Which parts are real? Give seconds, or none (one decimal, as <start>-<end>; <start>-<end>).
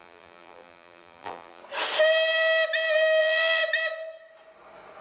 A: 1.6-3.2; 3.6-5.0